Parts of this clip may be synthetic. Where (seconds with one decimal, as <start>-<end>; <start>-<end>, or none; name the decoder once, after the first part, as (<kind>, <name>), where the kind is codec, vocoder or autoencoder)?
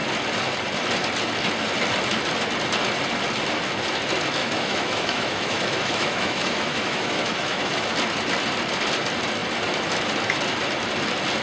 4.4-7.9 (autoencoder, DAC-VAE)